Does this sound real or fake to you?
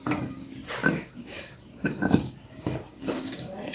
fake